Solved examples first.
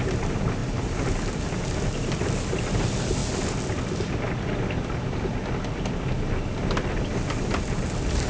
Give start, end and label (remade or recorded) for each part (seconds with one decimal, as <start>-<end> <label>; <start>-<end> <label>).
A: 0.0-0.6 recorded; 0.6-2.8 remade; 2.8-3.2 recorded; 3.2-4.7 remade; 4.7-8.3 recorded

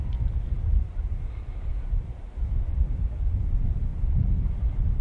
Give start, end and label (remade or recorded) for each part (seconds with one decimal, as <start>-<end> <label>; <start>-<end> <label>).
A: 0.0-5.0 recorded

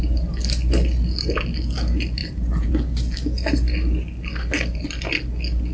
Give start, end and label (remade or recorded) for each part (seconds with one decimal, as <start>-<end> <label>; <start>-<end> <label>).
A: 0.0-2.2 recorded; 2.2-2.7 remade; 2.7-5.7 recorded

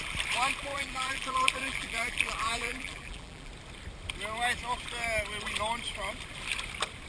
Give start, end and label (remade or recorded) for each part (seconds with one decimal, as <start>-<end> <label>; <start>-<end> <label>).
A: 0.0-0.7 recorded; 0.7-3.5 remade; 3.5-7.1 recorded